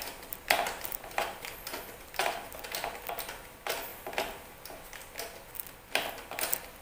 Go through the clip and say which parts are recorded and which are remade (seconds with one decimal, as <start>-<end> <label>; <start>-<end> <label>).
0.0-6.8 recorded